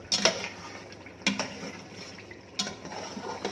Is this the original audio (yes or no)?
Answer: yes